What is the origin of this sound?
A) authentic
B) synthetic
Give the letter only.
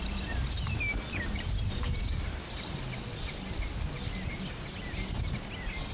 A